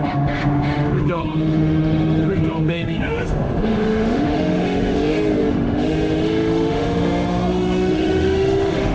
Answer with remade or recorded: remade